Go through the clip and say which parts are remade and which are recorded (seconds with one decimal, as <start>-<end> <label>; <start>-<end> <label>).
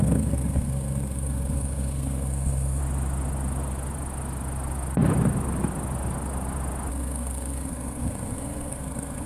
0.0-2.8 remade; 2.8-6.9 recorded; 6.9-9.3 remade